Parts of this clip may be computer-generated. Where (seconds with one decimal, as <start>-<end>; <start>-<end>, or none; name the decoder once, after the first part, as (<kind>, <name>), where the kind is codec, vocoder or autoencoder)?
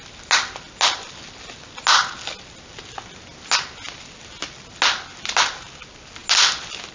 none